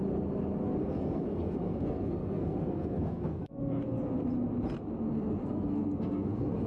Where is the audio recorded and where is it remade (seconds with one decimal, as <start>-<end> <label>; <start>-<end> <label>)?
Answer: 0.0-0.8 recorded; 0.8-3.7 remade; 3.7-5.4 recorded; 5.4-6.7 remade